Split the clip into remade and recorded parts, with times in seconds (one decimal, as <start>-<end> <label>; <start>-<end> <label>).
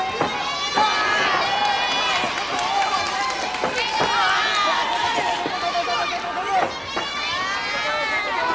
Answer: 0.0-8.5 recorded